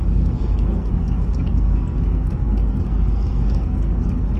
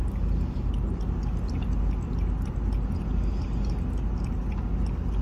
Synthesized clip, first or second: first